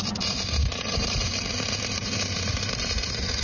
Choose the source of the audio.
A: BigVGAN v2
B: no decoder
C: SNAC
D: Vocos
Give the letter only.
A